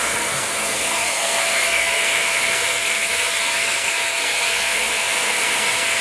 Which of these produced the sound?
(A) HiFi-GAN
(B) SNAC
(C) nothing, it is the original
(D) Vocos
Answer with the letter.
B